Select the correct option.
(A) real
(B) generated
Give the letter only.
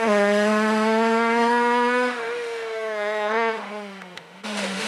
B